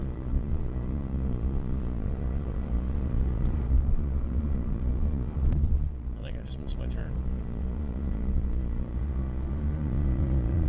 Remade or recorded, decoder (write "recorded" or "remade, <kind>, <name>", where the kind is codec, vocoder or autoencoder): remade, vocoder, Vocos